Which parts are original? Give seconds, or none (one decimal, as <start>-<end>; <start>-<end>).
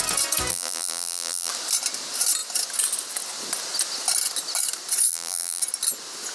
0.0-0.5; 1.5-5.1; 5.6-6.3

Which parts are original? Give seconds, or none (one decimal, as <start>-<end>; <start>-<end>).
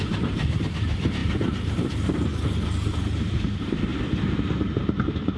1.2-1.7; 2.3-3.3; 3.9-4.5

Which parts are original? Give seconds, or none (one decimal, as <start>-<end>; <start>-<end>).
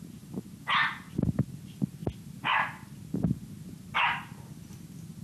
0.0-5.2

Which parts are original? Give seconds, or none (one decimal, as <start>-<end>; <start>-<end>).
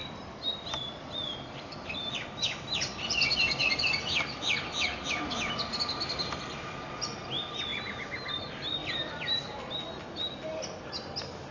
5.1-8.8; 9.4-11.5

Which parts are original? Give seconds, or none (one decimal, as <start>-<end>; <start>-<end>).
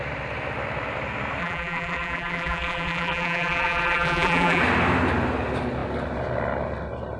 0.0-1.4; 4.6-7.2